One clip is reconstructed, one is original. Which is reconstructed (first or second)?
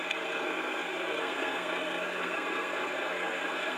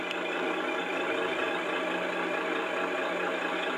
first